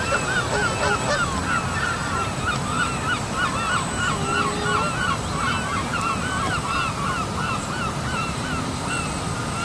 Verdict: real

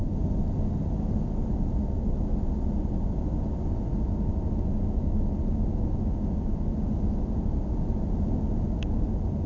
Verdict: real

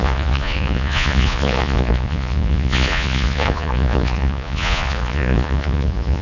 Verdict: fake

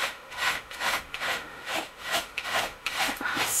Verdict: fake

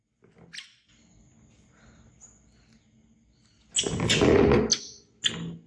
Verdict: real